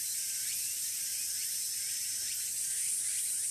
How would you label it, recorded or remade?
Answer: recorded